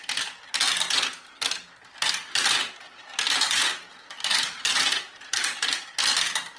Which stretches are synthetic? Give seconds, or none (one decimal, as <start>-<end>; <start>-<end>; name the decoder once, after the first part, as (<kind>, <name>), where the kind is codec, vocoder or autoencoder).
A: 4.3-5.8 (vocoder, BigVGAN v2)